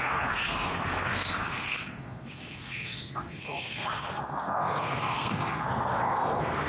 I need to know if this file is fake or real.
fake